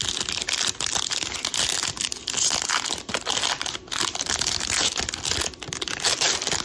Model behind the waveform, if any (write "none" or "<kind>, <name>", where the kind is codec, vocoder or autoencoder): none